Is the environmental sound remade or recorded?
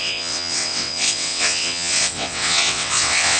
remade